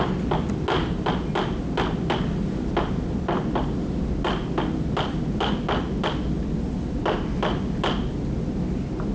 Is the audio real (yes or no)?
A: yes